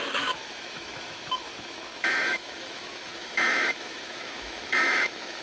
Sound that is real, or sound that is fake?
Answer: fake